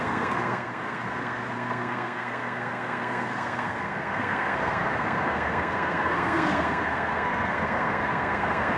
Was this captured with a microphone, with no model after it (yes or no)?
no